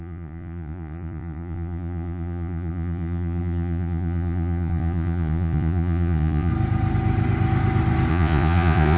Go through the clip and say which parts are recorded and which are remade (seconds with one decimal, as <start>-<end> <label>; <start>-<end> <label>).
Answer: 0.0-6.5 remade; 6.5-8.1 recorded; 8.1-9.0 remade